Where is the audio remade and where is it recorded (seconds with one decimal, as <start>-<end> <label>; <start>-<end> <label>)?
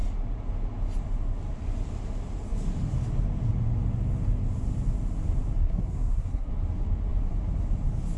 0.0-5.6 recorded; 5.6-6.5 remade; 6.5-8.2 recorded